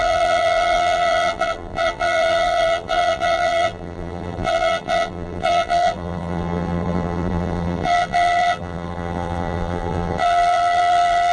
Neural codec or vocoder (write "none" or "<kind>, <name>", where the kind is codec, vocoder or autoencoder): vocoder, BigVGAN v2